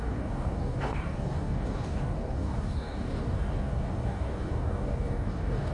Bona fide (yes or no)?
no